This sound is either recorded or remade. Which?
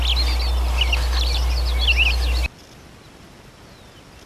recorded